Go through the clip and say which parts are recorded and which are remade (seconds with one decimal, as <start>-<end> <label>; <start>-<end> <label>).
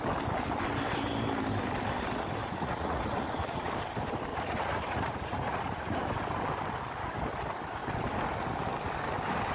0.0-2.4 recorded; 2.4-3.7 remade; 3.7-4.3 recorded; 4.3-6.0 remade; 6.0-9.5 recorded